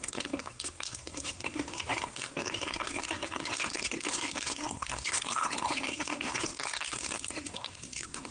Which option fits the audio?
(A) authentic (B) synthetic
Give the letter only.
B